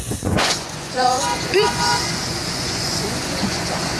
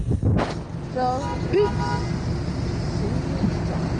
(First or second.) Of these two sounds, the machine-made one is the first